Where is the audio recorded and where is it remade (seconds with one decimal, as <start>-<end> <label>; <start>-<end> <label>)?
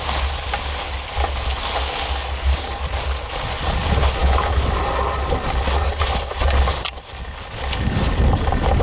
0.0-4.2 recorded; 4.2-4.8 remade; 4.8-8.8 recorded